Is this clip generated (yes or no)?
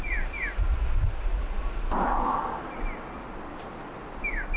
no